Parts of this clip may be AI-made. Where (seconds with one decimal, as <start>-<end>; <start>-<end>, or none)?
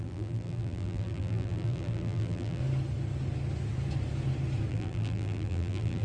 0.0-2.6; 4.7-6.0